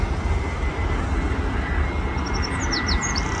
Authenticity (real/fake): real